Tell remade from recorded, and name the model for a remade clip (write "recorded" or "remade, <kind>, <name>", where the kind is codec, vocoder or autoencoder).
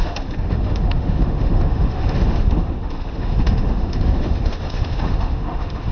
remade, autoencoder, DAC-VAE